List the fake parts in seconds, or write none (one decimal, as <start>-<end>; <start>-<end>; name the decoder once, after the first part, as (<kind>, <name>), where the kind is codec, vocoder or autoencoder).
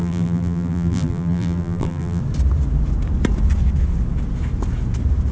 0.0-2.2 (vocoder, BigVGAN v2)